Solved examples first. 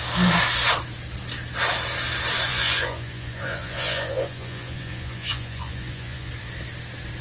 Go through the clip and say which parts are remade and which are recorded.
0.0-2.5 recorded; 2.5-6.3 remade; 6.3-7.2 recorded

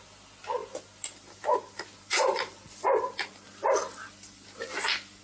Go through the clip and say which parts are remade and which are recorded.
0.0-5.2 recorded